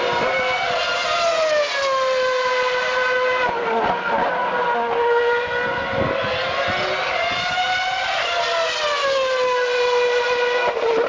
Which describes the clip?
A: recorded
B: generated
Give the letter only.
A